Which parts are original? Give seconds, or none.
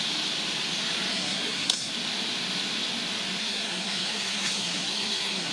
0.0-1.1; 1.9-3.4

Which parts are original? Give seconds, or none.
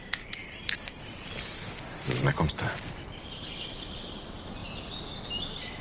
0.0-0.4; 3.5-5.8